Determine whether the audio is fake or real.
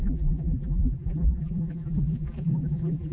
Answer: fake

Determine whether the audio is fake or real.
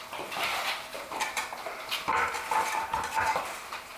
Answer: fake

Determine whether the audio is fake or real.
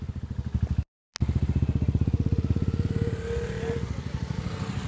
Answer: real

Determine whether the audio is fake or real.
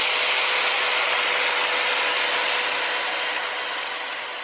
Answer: real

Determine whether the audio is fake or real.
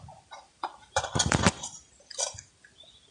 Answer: fake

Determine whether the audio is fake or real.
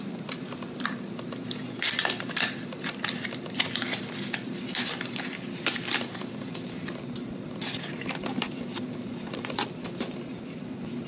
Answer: fake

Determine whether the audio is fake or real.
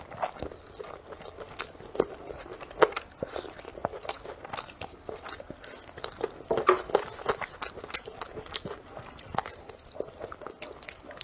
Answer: real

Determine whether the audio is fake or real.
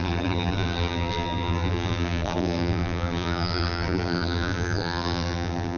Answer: fake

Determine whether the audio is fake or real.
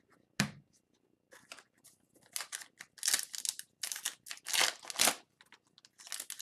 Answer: real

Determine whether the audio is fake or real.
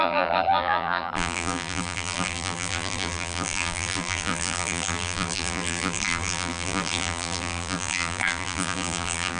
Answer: fake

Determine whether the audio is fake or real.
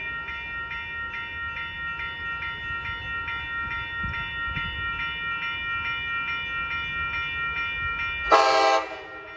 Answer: real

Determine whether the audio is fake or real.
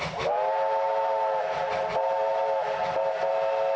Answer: real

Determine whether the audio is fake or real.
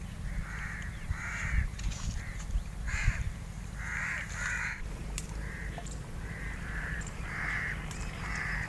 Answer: fake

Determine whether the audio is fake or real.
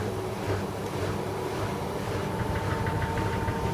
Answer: fake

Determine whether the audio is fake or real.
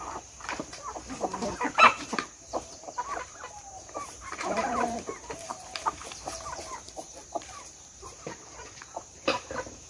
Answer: fake